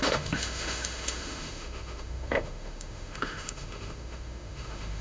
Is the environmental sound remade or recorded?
remade